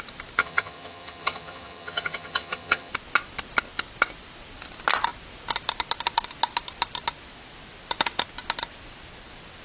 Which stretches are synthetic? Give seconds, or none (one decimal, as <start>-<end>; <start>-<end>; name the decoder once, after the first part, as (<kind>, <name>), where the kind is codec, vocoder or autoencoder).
0.4-2.9 (vocoder, HiFi-GAN)